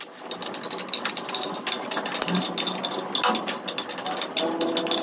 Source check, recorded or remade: recorded